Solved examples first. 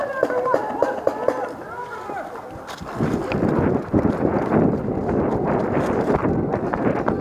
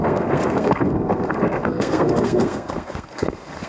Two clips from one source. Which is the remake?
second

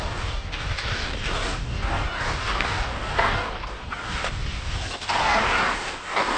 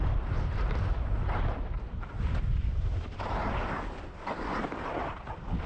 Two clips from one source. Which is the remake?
first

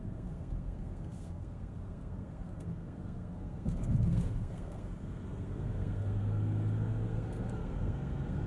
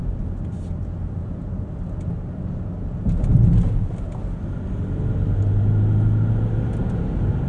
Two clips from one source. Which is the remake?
first